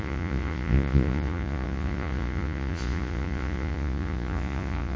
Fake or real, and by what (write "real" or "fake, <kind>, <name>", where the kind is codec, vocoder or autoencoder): fake, vocoder, Vocos